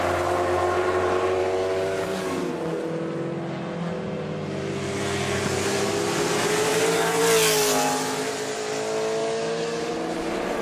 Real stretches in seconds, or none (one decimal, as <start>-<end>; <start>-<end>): 0.0-1.4; 2.5-6.7; 7.2-9.2; 9.9-10.6